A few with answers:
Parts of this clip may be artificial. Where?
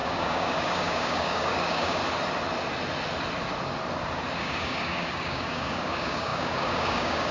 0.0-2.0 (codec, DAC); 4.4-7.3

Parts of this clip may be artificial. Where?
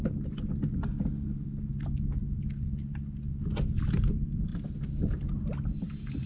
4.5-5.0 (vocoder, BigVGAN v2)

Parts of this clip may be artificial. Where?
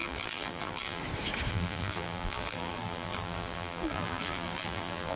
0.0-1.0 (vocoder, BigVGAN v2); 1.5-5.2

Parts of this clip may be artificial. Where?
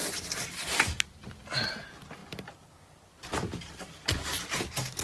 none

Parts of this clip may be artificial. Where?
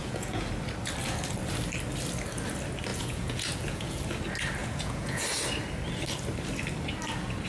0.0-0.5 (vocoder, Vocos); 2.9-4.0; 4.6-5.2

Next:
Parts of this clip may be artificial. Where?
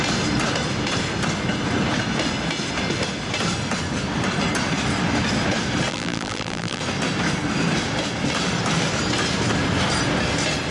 5.9-6.8 (vocoder, BigVGAN v2)